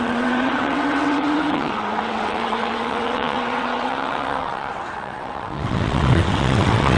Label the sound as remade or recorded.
remade